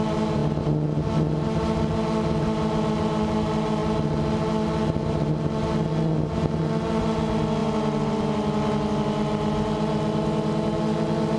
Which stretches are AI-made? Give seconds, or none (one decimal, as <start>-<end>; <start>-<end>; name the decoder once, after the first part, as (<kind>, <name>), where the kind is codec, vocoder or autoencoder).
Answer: none